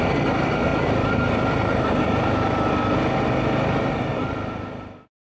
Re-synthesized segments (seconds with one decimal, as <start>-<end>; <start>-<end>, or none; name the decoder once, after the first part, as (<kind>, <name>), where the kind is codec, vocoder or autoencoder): none